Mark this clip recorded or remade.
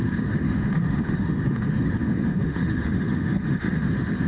remade